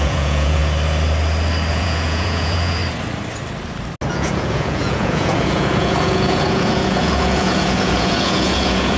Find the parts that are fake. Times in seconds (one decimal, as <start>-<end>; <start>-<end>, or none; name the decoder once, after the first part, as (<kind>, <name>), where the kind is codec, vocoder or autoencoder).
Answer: 0.0-0.6 (vocoder, Vocos); 1.7-2.8; 4.1-9.0